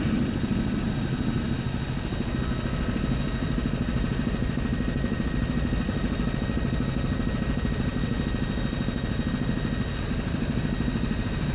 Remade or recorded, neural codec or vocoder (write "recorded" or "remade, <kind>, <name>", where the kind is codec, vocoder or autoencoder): recorded